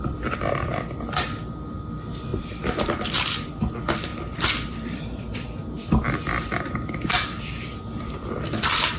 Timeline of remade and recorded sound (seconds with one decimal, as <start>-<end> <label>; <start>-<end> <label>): 0.0-9.0 recorded